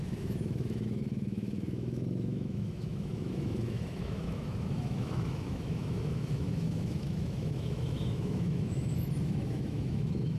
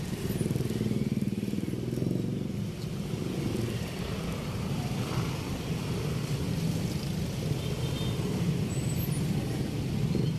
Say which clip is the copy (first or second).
first